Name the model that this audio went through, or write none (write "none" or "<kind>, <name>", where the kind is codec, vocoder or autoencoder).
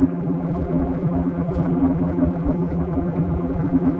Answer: vocoder, BigVGAN v2